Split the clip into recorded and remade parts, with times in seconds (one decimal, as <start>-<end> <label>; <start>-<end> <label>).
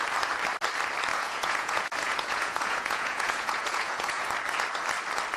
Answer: 0.0-1.1 recorded; 1.1-4.3 remade; 4.3-5.4 recorded